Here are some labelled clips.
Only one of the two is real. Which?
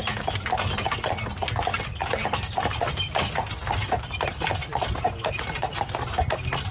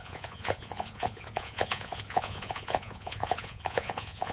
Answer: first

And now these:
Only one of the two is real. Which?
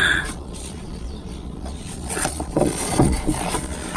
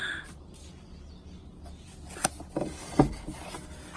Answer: second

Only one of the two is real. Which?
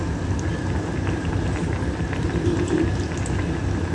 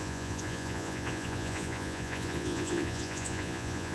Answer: first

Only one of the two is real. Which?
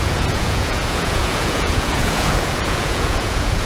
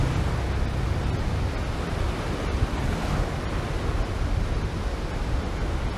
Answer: second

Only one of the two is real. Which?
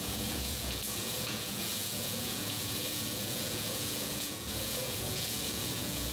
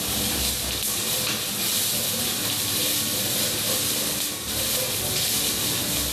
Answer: second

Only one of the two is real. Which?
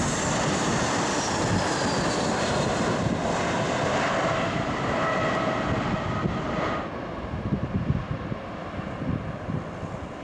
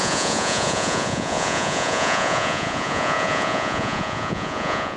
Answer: first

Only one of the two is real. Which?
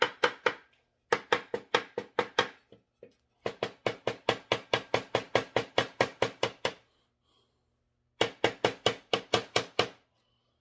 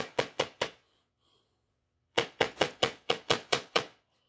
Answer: first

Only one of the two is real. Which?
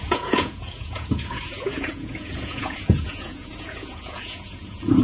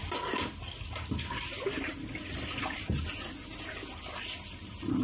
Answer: second